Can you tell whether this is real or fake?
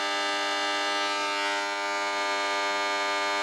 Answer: real